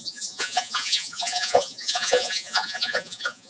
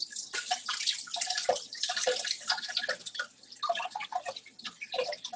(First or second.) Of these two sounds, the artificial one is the first